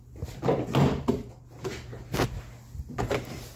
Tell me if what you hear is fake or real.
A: real